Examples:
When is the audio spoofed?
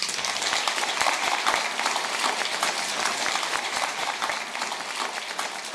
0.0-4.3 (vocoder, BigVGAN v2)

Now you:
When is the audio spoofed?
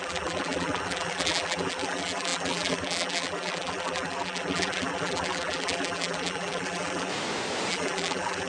0.0-7.1 (vocoder, BigVGAN v2); 7.7-8.5